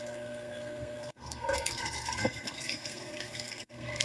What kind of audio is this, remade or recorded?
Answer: remade